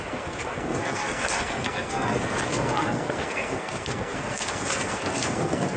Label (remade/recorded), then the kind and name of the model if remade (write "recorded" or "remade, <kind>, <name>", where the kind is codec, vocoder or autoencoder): remade, codec, SNAC